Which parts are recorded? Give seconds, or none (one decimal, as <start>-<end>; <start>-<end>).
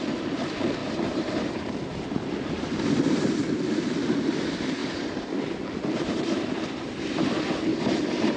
2.2-2.9; 4.8-5.9; 7.7-8.4